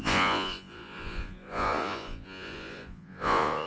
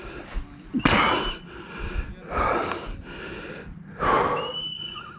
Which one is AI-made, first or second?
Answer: first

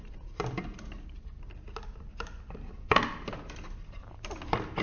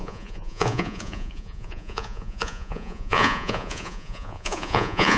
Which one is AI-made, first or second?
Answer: second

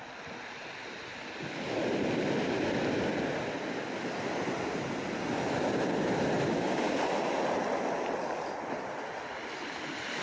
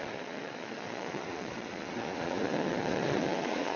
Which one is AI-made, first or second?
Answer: second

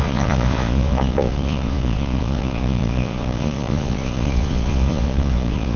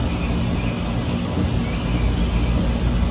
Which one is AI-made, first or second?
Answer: first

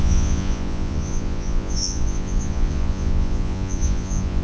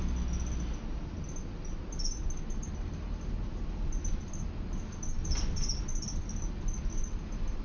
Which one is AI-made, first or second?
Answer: first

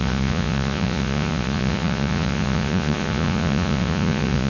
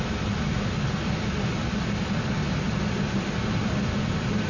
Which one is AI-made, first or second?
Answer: first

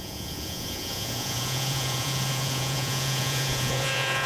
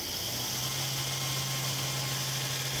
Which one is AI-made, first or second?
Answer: first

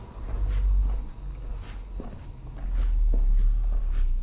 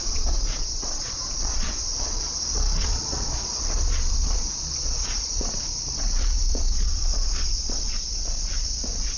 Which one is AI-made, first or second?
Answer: second